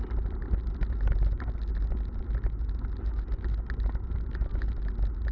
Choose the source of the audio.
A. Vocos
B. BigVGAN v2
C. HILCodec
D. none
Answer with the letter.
D